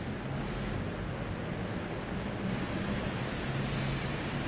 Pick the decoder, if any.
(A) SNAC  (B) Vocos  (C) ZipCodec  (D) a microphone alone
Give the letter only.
D